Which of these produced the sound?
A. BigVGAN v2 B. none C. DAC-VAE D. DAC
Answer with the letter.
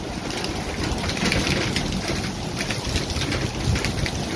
B